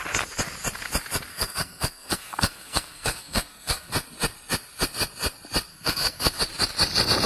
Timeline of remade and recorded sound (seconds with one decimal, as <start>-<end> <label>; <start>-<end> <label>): 0.0-1.3 recorded; 1.3-3.9 remade; 3.9-5.7 recorded; 5.7-6.4 remade; 6.4-7.3 recorded